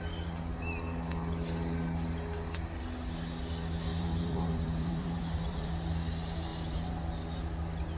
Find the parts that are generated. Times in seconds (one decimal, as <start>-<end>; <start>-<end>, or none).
3.9-5.7; 6.5-7.0